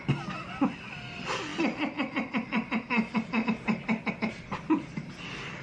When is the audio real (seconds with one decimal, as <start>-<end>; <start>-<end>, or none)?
0.0-5.6